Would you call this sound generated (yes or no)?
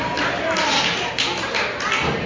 no